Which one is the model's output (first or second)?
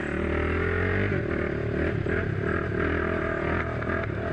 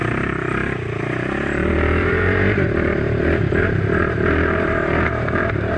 second